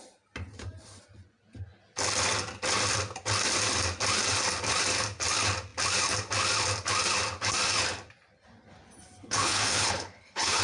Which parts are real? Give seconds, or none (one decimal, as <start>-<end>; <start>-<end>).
0.0-9.2